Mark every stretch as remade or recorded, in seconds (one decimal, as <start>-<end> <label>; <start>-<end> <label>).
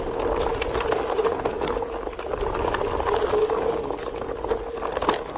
0.0-1.5 recorded; 1.5-2.1 remade; 2.1-3.4 recorded; 3.4-4.3 remade; 4.3-5.4 recorded